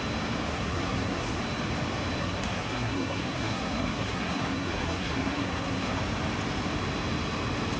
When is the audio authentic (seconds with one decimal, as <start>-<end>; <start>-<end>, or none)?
0.0-0.5; 1.4-2.2; 6.0-7.8